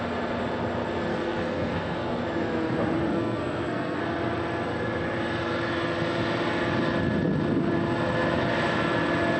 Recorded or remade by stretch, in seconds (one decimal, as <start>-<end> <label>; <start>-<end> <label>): 0.0-1.1 recorded; 1.1-2.2 remade; 2.2-3.1 recorded; 3.1-4.0 remade; 4.0-9.4 recorded